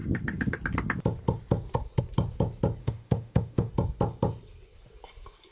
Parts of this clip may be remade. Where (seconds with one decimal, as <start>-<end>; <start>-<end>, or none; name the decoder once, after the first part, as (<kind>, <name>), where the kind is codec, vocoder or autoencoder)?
2.8-3.7 (autoencoder, DAC-VAE)